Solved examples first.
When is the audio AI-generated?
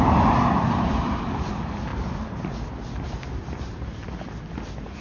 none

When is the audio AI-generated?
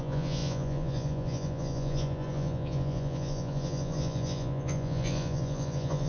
0.0-6.1 (vocoder, Vocos)